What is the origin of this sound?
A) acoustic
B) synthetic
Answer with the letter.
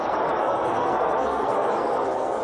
B